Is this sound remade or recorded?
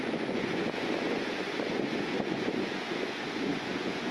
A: remade